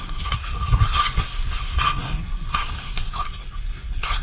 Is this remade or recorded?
remade